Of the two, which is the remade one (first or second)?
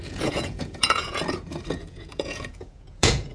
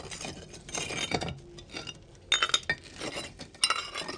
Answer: first